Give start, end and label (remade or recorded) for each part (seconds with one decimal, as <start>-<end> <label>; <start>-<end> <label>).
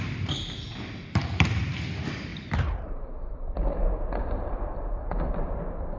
0.0-6.0 recorded